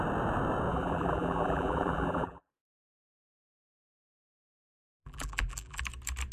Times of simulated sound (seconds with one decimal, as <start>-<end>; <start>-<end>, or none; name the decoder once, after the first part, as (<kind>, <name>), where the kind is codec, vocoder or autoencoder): 0.7-2.5 (vocoder, BigVGAN v2); 3.5-5.8